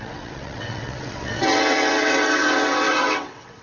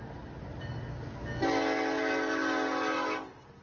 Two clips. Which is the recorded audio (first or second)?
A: second